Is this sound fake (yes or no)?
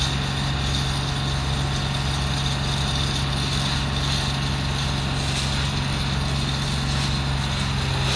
no